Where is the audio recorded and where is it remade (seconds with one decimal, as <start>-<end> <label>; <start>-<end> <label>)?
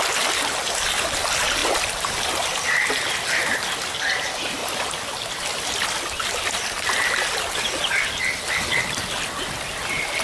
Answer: 0.0-10.2 recorded